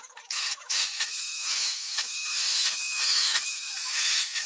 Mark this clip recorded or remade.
remade